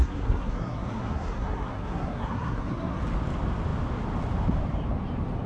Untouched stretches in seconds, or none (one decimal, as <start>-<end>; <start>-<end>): 3.0-5.5